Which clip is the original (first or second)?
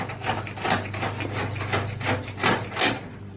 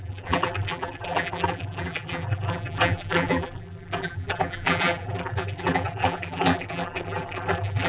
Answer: first